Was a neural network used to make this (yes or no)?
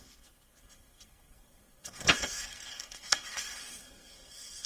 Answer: yes